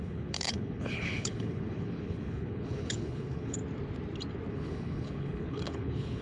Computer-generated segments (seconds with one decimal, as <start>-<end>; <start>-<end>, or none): 0.0-3.6; 4.5-6.2